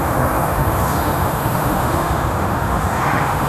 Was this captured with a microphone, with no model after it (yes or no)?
no